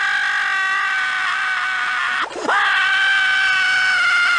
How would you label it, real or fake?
real